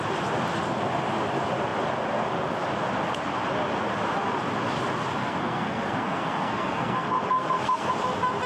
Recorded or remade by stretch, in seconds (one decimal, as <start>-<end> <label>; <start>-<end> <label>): 0.0-5.2 recorded; 5.2-7.9 remade; 7.9-8.5 recorded